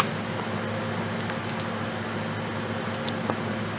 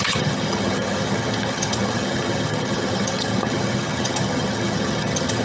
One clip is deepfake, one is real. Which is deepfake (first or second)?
second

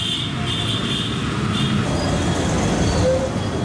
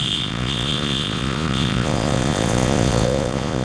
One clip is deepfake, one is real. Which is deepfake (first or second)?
second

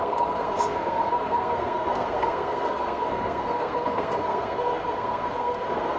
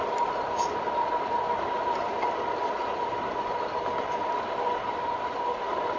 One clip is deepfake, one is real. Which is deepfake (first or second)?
first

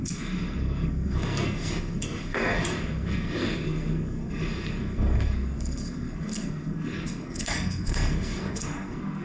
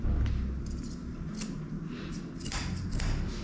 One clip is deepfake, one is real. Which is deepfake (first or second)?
first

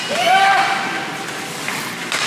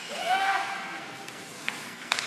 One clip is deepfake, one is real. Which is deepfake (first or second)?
second